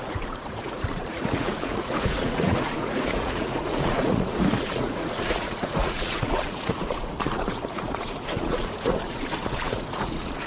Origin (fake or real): fake